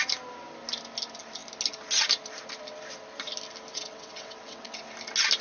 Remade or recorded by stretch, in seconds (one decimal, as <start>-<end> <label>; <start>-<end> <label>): 0.0-3.7 recorded; 3.7-4.8 remade; 4.8-5.4 recorded

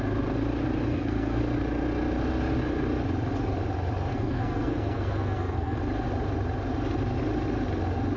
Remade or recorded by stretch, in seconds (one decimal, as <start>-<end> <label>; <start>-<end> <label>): 0.0-0.9 recorded; 0.9-1.4 remade; 1.4-4.1 recorded; 4.1-5.8 remade; 5.8-8.2 recorded

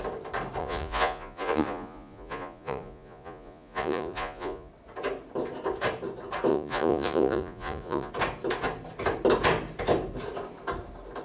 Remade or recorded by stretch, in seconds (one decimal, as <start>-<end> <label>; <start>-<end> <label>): 0.0-0.6 recorded; 0.6-4.7 remade; 4.7-6.5 recorded; 6.5-8.1 remade; 8.1-11.2 recorded

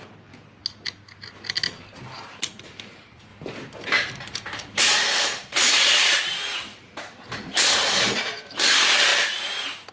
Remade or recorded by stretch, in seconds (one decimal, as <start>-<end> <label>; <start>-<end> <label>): 0.0-0.6 remade; 0.6-1.9 recorded; 1.9-3.3 remade; 3.3-4.8 recorded; 4.8-9.1 remade; 9.1-9.9 recorded

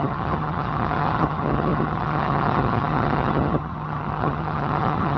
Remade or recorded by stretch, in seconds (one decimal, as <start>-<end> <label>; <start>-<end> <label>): 0.0-5.2 remade

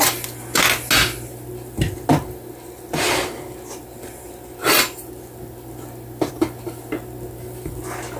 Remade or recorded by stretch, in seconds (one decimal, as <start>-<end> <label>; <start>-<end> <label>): 0.0-8.2 recorded

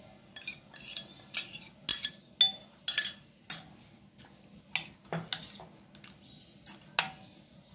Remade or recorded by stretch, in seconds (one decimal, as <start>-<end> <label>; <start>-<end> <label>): 0.0-7.7 recorded